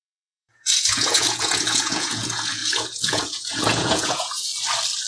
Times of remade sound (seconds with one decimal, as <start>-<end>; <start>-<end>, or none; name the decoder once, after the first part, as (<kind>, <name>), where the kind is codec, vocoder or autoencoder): 0.0-4.5 (vocoder, Vocos)